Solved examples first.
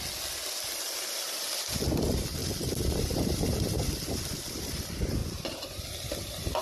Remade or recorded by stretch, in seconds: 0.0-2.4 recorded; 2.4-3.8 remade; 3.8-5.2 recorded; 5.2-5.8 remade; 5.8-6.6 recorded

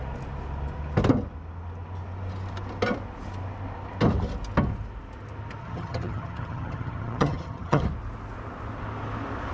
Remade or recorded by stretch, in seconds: 0.0-5.6 recorded; 5.6-7.8 remade; 7.8-9.5 recorded